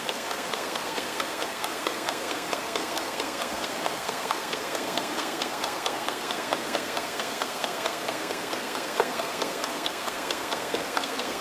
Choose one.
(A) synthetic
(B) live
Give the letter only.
A